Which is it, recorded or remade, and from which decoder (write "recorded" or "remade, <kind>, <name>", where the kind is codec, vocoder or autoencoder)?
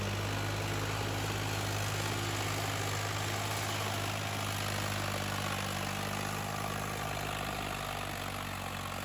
recorded